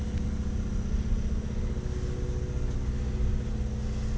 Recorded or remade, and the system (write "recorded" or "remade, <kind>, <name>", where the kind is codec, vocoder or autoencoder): recorded